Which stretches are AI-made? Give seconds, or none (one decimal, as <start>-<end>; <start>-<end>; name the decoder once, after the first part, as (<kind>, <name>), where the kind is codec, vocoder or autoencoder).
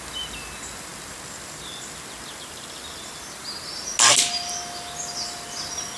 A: none